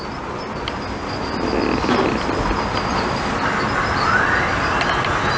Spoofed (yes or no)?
no